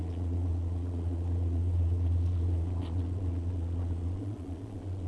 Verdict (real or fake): fake